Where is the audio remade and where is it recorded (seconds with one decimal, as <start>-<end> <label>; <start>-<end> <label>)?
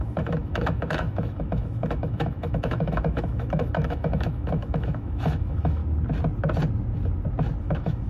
0.0-5.8 remade; 5.8-7.6 recorded; 7.6-8.1 remade